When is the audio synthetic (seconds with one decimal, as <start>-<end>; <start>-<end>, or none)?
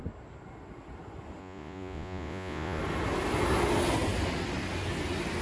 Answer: 1.4-2.8